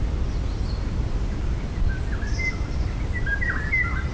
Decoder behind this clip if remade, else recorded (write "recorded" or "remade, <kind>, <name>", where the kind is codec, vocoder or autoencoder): remade, vocoder, BigVGAN v2